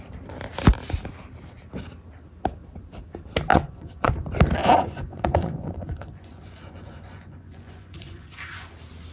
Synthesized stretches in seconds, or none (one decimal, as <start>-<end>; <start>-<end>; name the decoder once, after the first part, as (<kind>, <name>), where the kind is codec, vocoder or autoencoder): 3.5-4.1 (vocoder, Vocos); 4.6-8.7